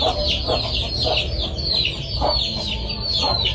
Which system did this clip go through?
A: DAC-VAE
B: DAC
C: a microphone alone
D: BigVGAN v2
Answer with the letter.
C